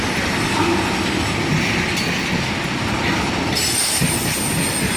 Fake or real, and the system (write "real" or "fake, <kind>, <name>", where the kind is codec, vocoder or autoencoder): real